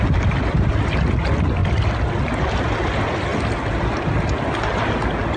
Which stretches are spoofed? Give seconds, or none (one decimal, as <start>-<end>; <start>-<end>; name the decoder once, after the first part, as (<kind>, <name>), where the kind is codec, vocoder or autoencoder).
none